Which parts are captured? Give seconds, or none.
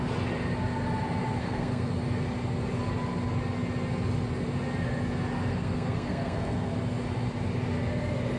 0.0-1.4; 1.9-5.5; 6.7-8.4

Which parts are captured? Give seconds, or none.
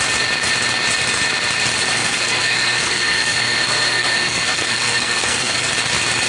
0.0-1.9; 5.7-6.3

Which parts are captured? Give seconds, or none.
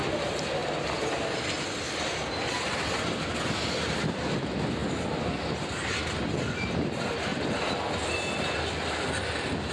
0.0-9.7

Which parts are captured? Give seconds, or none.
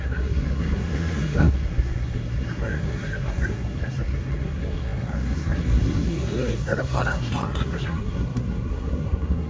none